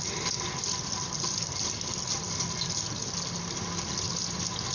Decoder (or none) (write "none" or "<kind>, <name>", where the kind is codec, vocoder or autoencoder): none